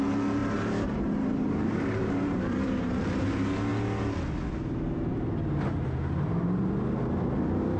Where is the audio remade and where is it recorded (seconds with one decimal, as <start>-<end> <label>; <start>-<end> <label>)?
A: 0.0-0.4 recorded; 0.4-3.3 remade; 3.3-7.8 recorded